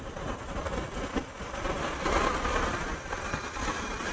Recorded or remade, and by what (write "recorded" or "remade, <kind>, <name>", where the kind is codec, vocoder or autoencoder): recorded